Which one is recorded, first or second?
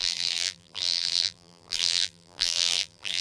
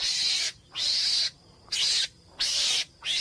second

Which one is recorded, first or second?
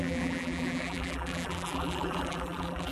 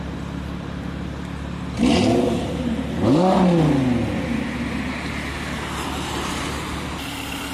second